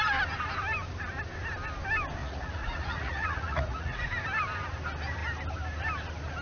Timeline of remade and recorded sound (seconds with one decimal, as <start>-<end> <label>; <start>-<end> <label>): 0.0-2.2 recorded; 2.2-4.0 remade; 4.0-6.4 recorded